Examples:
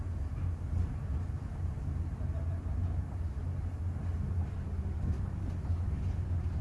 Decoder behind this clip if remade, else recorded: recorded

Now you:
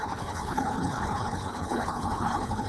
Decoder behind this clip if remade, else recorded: remade, codec, HILCodec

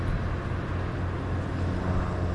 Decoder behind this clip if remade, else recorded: recorded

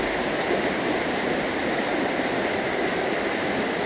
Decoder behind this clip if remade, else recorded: recorded